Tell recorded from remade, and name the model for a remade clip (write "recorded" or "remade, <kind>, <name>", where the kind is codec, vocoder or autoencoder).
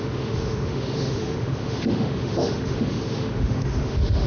remade, autoencoder, DAC-VAE